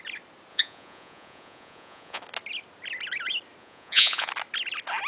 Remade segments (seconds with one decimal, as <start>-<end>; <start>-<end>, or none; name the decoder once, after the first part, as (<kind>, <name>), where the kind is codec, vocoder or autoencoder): 0.5-2.2 (vocoder, Vocos); 3.6-4.3